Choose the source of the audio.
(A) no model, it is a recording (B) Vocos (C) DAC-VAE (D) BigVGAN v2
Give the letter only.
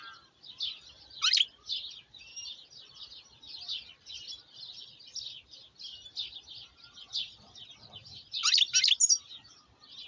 A